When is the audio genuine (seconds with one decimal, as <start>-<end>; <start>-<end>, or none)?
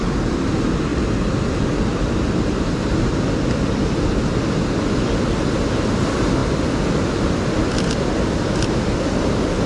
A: 0.0-9.7